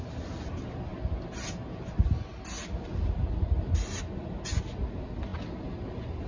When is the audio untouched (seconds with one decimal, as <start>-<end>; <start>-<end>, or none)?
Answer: 0.0-6.3